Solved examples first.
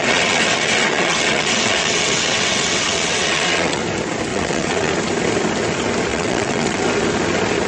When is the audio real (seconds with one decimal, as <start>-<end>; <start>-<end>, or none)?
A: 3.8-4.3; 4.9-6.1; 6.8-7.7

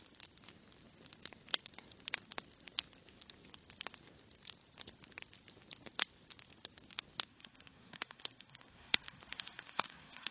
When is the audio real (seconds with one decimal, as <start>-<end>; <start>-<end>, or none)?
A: 0.0-7.3

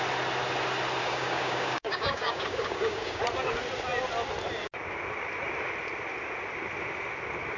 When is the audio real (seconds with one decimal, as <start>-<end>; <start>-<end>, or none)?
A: 0.0-1.0; 3.2-7.6

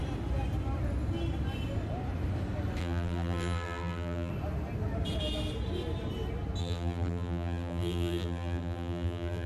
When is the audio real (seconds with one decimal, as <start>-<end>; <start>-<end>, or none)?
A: 0.0-2.8; 4.3-6.6

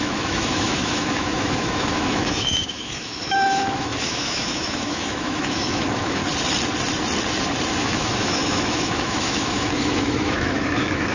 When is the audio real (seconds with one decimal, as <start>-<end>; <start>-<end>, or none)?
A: 6.2-7.8

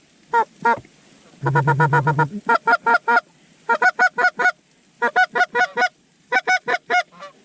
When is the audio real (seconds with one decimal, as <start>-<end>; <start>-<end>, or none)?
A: 0.0-5.7

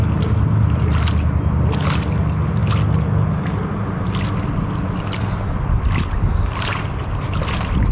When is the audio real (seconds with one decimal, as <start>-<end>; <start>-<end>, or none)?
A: 0.0-7.9

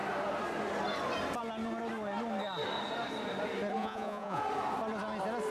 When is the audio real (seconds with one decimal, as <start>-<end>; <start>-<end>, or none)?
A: 0.0-3.8; 4.4-5.5